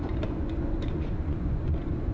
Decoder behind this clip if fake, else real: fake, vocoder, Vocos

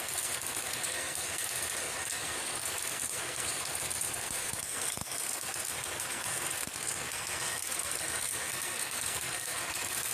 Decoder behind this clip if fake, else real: fake, codec, SNAC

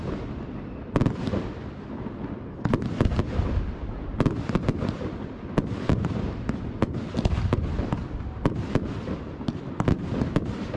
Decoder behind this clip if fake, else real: real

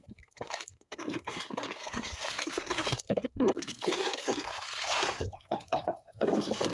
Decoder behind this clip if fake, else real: fake, codec, SNAC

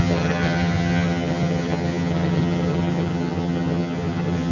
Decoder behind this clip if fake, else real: fake, vocoder, HiFi-GAN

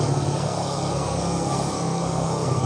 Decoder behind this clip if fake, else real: fake, codec, SNAC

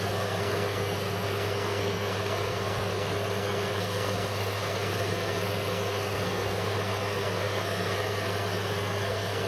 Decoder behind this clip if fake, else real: fake, codec, SNAC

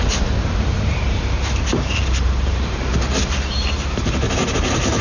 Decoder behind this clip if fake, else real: fake, vocoder, BigVGAN v2